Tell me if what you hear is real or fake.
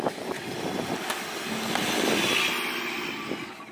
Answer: real